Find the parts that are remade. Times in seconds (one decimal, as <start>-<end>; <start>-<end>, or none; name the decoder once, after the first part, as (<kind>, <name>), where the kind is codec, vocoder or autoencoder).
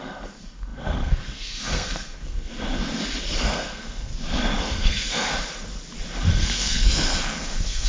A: 0.0-2.5 (codec, SNAC); 3.5-4.1; 4.6-5.3; 6.3-7.9